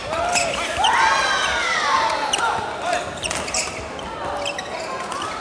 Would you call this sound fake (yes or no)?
no